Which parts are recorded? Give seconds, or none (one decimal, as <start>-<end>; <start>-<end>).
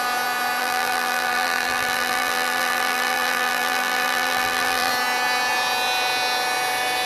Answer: 0.0-0.6; 4.9-7.1